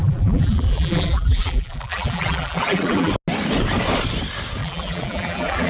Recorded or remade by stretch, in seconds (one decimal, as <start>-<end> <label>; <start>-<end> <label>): 0.0-3.1 remade; 3.1-4.6 recorded; 4.6-5.7 remade